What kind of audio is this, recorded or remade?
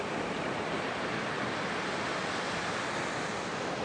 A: remade